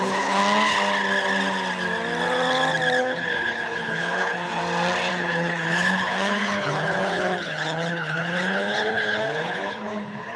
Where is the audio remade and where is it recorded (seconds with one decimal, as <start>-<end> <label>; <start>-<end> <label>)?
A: 0.0-0.4 remade; 0.4-3.0 recorded; 3.0-4.6 remade; 4.6-5.1 recorded; 5.1-10.4 remade